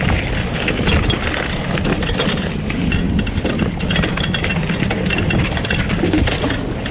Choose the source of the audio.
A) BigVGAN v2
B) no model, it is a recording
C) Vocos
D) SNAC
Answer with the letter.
B